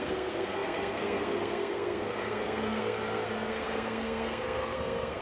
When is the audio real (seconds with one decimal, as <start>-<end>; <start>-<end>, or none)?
none